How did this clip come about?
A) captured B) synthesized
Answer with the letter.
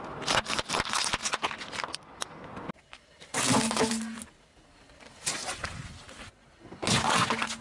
A